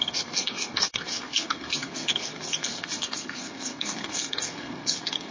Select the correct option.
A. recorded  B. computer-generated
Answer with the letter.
B